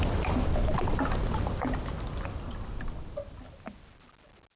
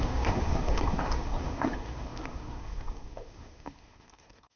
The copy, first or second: second